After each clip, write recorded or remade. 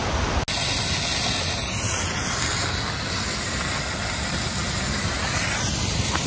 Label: recorded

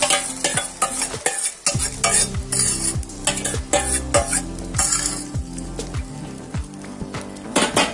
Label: recorded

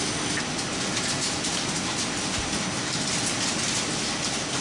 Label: recorded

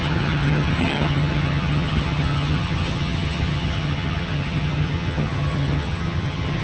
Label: remade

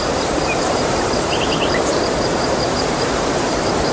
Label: remade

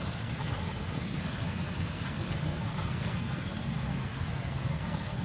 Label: remade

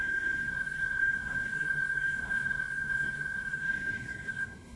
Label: remade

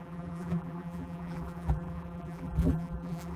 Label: remade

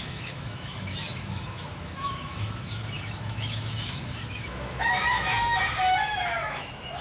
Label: remade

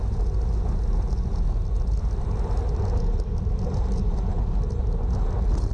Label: recorded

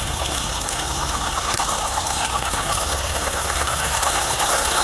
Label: remade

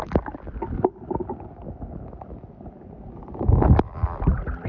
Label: recorded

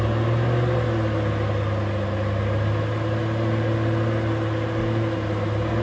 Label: recorded